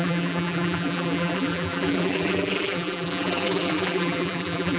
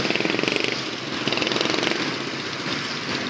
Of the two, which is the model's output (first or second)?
first